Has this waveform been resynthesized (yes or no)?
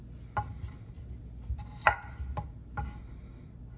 no